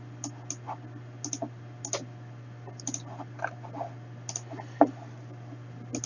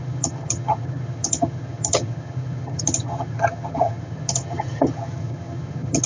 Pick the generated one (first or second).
second